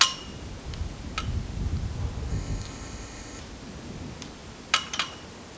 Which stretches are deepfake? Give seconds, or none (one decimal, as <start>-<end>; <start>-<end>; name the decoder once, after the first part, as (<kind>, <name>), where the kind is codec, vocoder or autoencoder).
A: 2.3-3.4 (codec, ZipCodec)